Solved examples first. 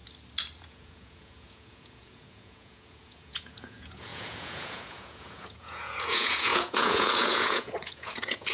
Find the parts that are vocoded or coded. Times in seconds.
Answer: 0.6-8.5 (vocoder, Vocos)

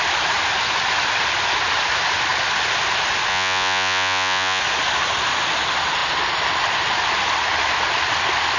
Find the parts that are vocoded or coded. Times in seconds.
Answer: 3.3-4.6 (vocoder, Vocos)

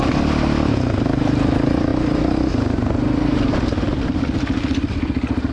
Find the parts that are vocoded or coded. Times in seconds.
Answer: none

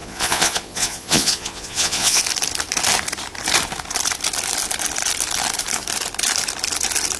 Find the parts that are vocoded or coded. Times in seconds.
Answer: 0.0-2.2 (vocoder, Vocos)

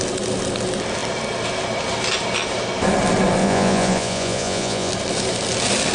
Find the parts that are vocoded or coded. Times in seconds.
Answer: 3.4-4.9 (vocoder, Vocos)

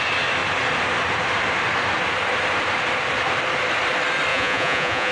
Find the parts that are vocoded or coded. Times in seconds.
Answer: 4.3-5.1 (vocoder, Vocos)